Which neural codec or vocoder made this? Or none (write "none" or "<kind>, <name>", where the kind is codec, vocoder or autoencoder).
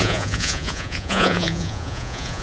vocoder, Vocos